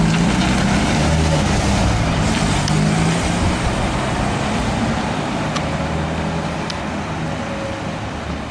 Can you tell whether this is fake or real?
real